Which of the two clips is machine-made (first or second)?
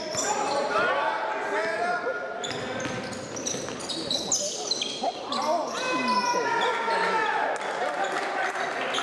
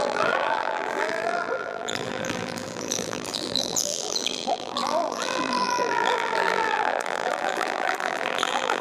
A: second